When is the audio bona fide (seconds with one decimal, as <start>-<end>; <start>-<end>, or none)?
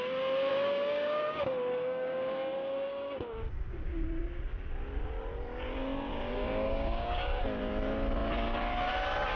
0.0-0.5; 4.0-6.1; 7.4-9.4